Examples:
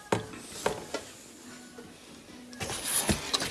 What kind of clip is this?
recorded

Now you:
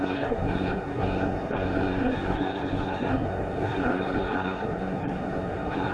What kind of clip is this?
remade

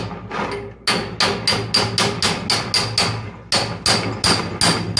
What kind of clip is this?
recorded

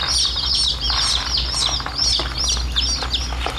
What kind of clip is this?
recorded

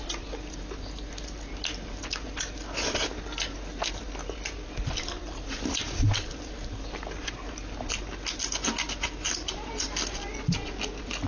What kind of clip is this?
recorded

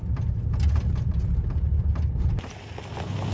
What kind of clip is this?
recorded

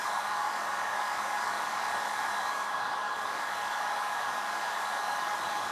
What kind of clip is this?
remade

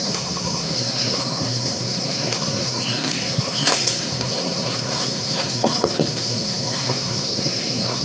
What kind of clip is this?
remade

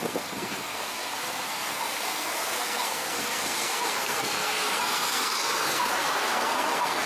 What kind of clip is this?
remade